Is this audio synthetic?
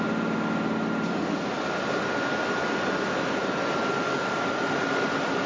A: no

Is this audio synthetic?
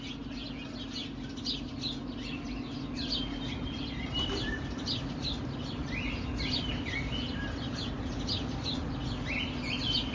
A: no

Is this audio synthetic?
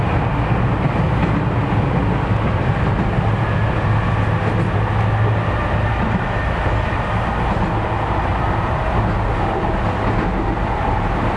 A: no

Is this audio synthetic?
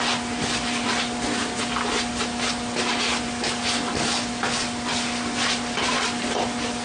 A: no